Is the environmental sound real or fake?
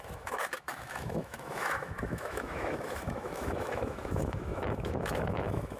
fake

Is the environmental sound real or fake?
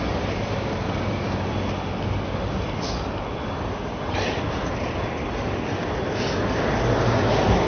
real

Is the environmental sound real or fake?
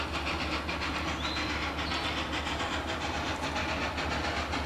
real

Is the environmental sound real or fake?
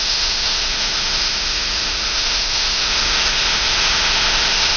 fake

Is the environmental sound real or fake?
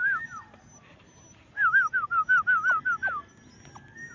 real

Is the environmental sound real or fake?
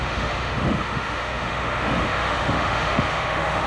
fake